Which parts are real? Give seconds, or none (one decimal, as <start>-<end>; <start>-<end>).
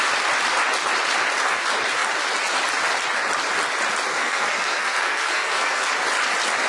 0.0-4.1; 5.9-6.7